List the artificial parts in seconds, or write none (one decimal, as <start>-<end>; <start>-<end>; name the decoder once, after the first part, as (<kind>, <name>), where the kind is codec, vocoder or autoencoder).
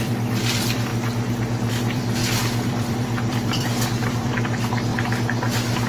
0.0-0.9 (vocoder, BigVGAN v2); 1.7-4.9